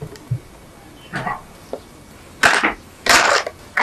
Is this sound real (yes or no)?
yes